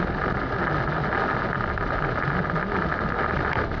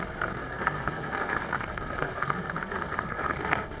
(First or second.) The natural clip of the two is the first